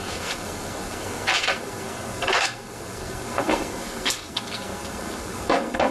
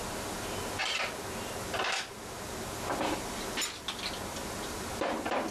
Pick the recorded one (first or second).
second